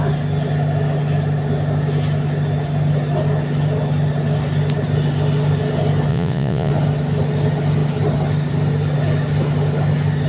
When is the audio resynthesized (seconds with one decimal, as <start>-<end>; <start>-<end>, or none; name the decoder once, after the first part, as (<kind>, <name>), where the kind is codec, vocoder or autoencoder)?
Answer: 6.1-6.7 (vocoder, Vocos)